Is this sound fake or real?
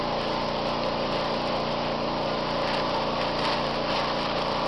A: real